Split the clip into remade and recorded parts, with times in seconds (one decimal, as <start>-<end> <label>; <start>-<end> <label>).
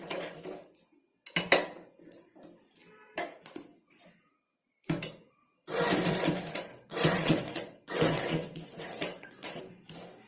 0.0-6.7 recorded; 6.7-9.6 remade; 9.6-10.3 recorded